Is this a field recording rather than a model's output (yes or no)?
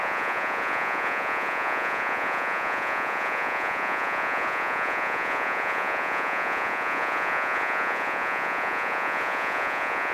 no